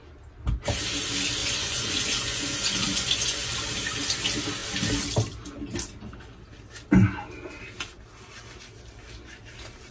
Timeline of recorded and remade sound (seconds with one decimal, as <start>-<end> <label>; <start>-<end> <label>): 0.0-1.4 recorded; 1.4-3.5 remade; 3.5-9.9 recorded